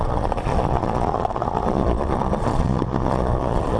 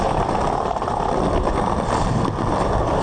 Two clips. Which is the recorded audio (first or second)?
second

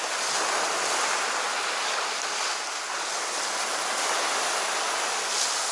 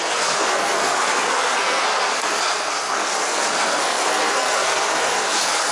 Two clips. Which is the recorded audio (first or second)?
first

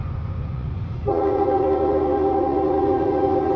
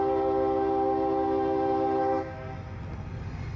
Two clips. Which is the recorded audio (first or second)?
second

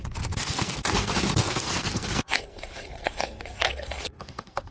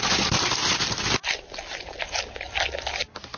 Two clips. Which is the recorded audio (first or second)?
second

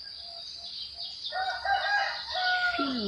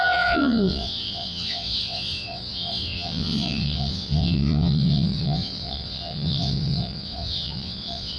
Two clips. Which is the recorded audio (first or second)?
first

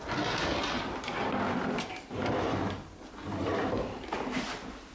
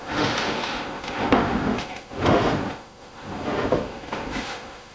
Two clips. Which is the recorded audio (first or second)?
first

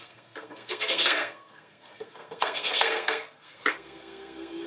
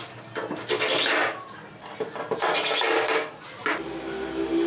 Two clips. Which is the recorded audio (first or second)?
second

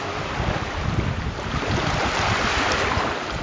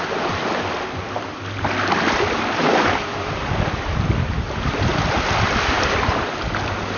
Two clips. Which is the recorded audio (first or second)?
first